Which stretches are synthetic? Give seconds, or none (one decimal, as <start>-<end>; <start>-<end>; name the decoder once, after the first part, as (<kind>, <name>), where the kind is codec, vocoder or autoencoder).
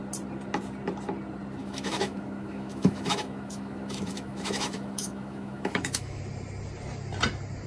1.6-6.2 (autoencoder, DAC-VAE)